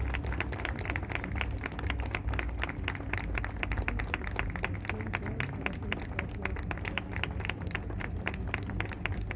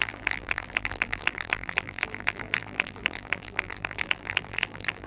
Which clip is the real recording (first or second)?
first